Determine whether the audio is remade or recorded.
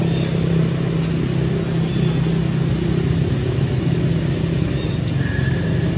recorded